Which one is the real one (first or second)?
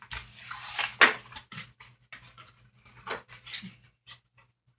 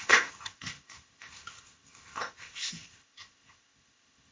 first